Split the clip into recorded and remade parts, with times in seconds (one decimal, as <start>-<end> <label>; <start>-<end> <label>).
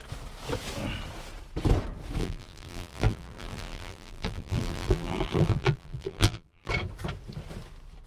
0.0-2.2 recorded; 2.2-6.7 remade; 6.7-8.1 recorded